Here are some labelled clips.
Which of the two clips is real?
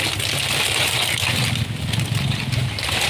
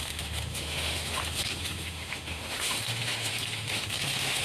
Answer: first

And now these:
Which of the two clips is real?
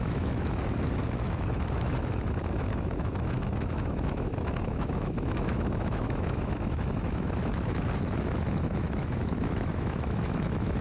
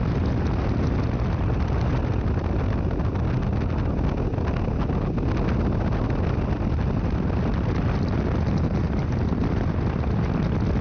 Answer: second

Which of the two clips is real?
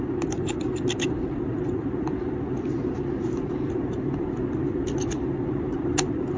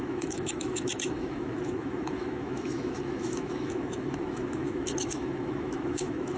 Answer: first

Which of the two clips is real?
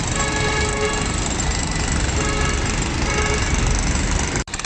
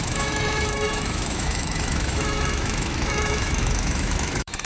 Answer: first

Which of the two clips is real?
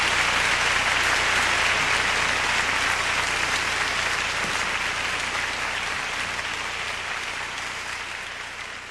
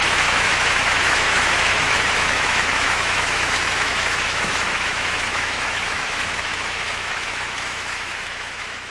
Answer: first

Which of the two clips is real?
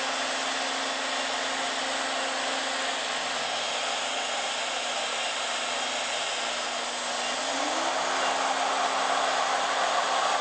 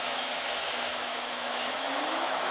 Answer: first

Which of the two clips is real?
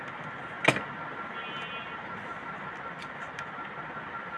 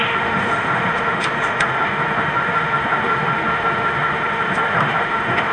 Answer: first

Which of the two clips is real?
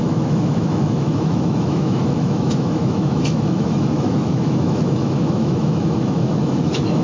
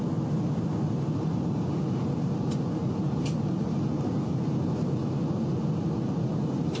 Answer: second